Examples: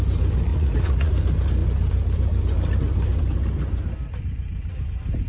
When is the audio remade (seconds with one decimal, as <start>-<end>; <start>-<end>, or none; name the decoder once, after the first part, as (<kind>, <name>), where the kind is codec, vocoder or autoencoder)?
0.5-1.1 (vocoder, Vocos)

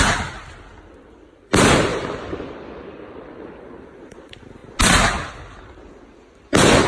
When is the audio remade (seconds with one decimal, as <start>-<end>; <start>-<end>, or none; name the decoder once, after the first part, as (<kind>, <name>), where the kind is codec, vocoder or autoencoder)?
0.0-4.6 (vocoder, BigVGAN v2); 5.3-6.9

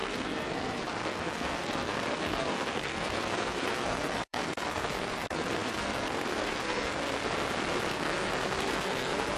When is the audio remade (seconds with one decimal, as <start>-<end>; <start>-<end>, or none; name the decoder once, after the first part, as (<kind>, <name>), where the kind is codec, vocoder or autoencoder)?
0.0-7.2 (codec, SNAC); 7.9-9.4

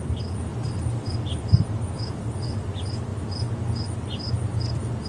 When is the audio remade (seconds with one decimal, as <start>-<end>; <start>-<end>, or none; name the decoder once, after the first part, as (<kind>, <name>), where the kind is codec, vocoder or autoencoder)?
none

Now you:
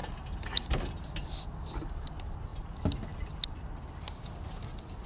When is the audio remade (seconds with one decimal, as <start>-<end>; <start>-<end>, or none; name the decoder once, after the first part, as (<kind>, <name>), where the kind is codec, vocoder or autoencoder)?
0.0-0.8 (vocoder, BigVGAN v2)

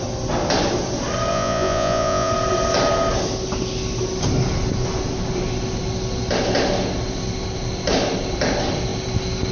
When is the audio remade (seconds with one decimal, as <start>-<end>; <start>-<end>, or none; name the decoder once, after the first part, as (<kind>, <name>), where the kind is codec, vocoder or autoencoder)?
1.3-2.3 (vocoder, Vocos)